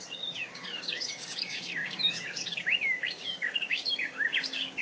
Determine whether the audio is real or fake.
fake